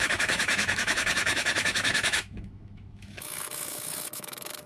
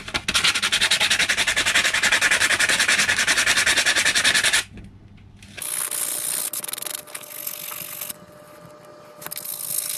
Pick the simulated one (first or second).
first